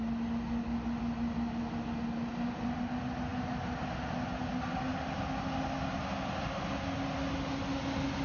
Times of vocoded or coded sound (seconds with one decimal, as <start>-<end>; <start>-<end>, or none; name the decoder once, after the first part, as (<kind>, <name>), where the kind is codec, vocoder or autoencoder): none